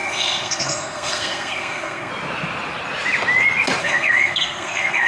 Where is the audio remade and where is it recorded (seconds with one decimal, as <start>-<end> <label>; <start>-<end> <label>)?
0.0-2.1 remade; 2.1-3.8 recorded; 3.8-5.1 remade